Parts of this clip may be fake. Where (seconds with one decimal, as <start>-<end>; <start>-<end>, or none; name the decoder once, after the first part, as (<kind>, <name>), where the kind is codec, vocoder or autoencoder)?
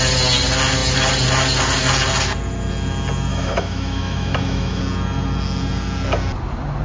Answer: 3.3-4.8 (autoencoder, DAC-VAE)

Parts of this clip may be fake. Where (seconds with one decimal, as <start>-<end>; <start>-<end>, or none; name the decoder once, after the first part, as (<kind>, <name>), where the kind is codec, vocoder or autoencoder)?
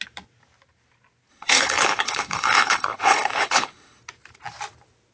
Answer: 1.3-4.0 (codec, HILCodec)